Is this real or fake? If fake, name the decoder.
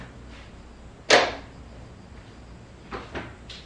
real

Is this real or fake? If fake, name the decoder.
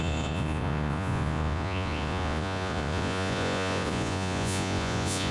fake, vocoder, Vocos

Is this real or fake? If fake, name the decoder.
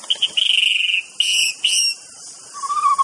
real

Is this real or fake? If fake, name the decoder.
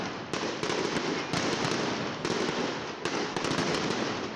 real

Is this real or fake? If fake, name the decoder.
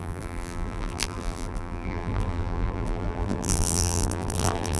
fake, vocoder, BigVGAN v2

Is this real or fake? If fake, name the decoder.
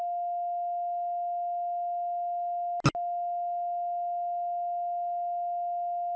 real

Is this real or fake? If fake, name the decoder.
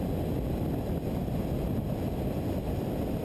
real